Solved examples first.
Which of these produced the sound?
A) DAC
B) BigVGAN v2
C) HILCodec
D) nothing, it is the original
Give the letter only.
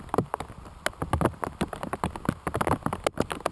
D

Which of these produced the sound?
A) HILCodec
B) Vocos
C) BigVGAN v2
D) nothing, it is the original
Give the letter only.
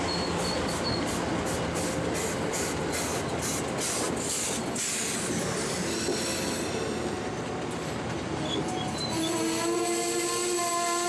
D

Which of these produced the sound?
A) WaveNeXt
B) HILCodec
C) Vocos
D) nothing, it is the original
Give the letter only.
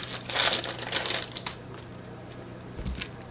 D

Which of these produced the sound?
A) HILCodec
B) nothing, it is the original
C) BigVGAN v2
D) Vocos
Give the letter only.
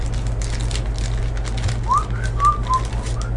B